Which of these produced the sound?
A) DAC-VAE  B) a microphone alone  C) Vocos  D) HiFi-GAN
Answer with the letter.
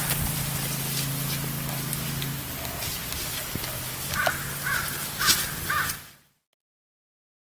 B